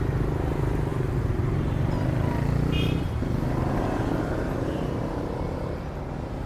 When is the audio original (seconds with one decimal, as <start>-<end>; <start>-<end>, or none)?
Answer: 0.0-6.5